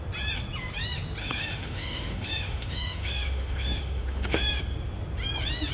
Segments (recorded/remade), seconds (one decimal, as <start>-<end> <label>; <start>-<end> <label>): 0.0-1.2 recorded; 1.2-4.6 remade; 4.6-5.7 recorded